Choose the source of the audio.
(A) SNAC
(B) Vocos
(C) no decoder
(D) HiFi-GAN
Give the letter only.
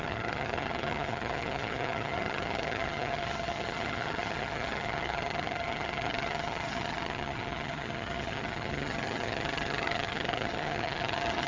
D